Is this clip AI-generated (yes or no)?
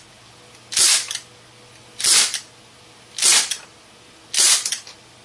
no